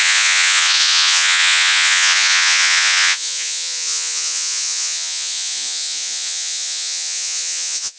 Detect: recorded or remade remade